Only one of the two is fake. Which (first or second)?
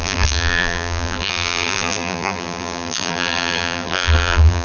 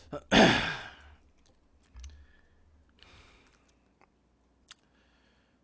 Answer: first